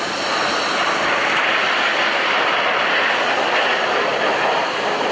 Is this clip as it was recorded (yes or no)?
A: yes